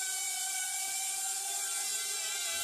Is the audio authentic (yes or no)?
yes